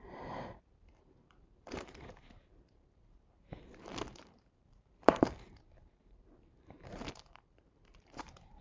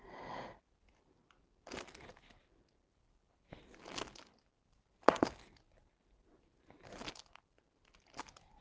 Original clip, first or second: second